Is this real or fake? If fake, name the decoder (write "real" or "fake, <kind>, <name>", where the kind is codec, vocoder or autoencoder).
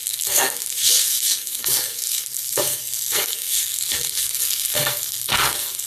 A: fake, codec, SNAC